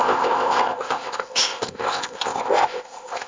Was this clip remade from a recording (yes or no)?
yes